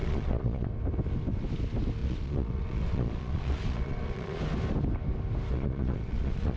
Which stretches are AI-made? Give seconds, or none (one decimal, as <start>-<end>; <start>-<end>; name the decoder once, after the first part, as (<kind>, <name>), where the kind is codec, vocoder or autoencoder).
0.0-0.7 (vocoder, Vocos); 2.0-4.4; 5.5-6.6